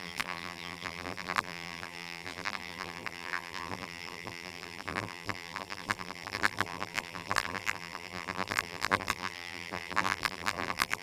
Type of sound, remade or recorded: remade